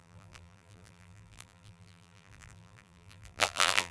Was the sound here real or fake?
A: fake